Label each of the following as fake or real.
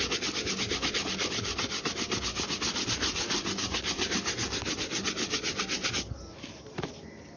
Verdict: real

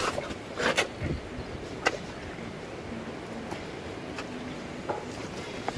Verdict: real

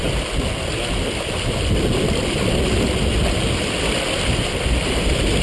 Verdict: real